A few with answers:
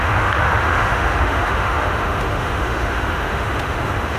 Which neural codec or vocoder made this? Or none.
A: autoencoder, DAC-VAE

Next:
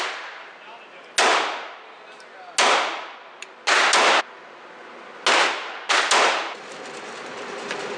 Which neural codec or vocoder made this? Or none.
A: none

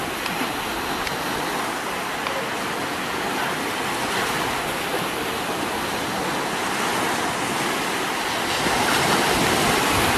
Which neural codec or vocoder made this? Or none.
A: none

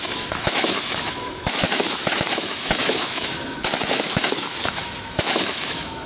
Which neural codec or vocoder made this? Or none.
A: autoencoder, DAC-VAE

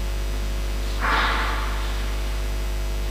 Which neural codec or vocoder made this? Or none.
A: none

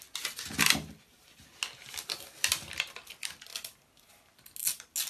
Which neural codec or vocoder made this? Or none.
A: none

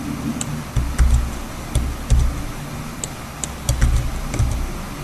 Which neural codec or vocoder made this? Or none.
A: none